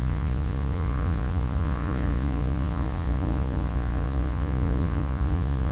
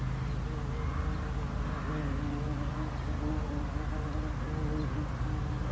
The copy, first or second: first